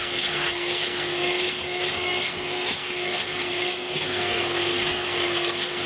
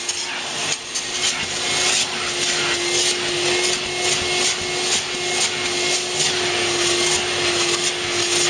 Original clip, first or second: second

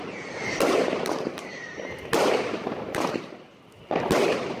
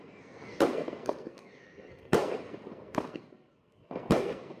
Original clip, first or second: first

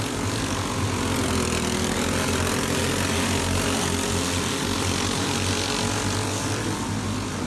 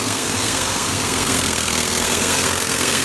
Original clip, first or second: first